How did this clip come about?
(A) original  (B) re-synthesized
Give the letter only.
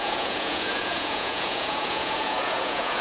B